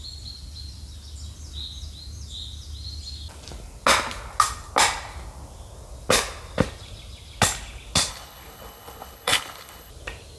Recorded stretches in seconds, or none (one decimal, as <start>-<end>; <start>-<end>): 0.0-8.1; 9.9-10.4